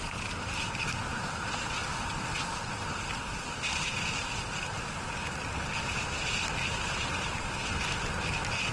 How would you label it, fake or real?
real